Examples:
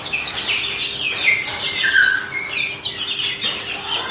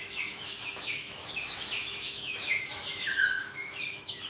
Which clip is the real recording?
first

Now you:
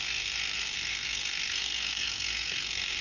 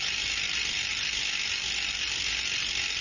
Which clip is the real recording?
second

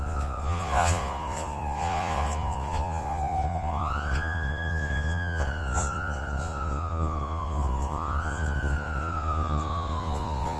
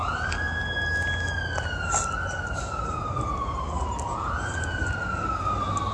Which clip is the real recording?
second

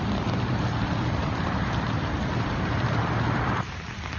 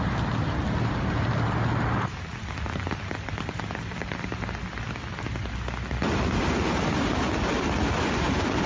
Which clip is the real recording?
second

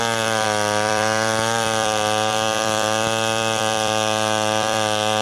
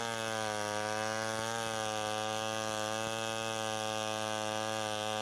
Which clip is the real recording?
second